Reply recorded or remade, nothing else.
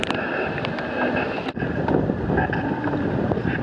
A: recorded